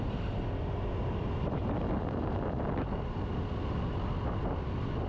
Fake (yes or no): no